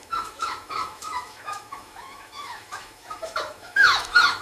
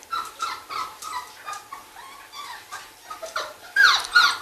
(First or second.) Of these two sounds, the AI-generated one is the first